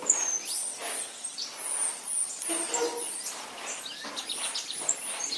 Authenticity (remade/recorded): recorded